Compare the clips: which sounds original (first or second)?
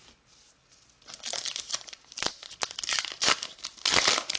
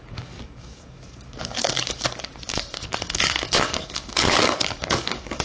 first